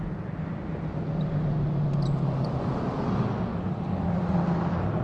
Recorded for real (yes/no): yes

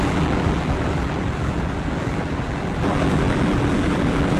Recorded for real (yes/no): no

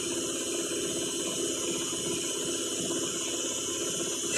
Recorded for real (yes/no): yes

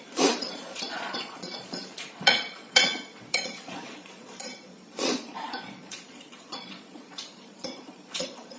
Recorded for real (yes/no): no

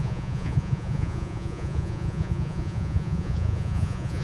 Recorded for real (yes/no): no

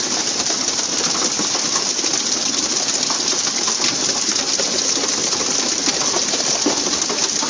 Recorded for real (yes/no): yes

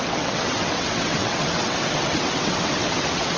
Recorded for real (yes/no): no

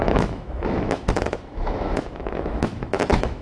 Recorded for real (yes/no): no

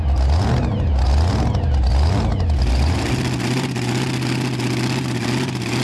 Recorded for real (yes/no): yes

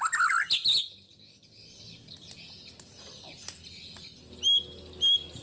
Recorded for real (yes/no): yes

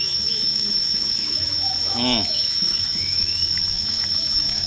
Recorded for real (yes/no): no